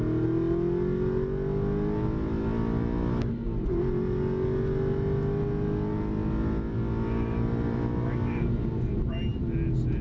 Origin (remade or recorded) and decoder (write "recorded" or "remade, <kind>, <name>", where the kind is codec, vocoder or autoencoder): recorded